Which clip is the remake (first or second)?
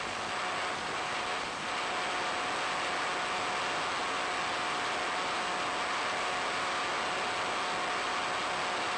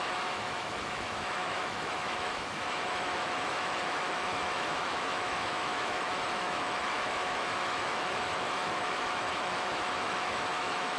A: second